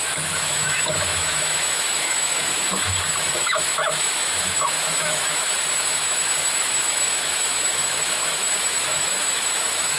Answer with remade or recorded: remade